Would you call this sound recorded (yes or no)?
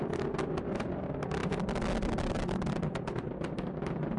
yes